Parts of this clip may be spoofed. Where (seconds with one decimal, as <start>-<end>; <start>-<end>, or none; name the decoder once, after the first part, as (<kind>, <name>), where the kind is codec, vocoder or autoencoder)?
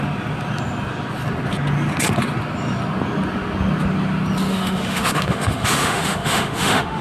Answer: 4.5-7.0 (autoencoder, DAC-VAE)